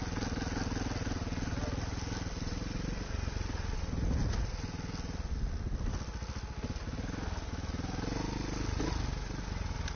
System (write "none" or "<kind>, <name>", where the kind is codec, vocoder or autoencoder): none